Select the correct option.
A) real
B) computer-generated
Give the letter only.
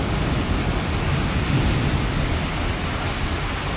A